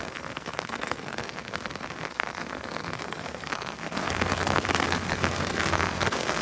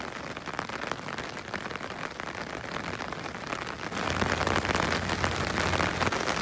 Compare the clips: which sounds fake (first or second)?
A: first